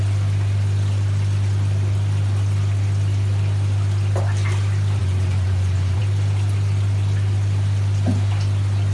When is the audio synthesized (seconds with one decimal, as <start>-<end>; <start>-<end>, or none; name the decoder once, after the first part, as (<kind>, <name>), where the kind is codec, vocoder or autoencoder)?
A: 5.0-6.0 (vocoder, Vocos)